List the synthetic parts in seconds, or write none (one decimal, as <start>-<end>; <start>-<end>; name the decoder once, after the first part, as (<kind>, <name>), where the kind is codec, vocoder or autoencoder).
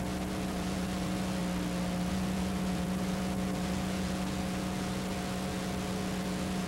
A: 0.0-1.4 (vocoder, Vocos); 2.1-6.7